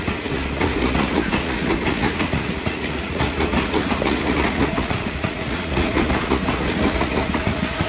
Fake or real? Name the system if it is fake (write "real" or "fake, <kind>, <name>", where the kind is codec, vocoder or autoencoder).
fake, vocoder, Vocos